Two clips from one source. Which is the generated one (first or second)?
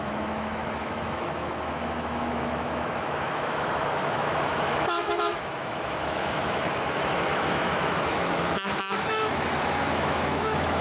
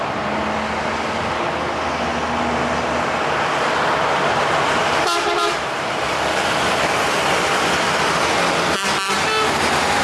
first